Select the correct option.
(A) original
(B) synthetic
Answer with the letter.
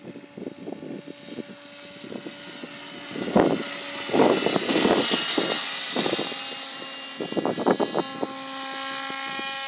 A